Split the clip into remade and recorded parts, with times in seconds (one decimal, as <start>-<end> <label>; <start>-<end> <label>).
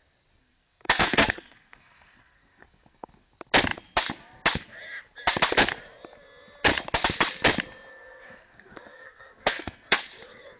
0.0-0.4 recorded; 0.4-3.3 remade; 3.3-7.9 recorded; 7.9-10.0 remade; 10.0-10.6 recorded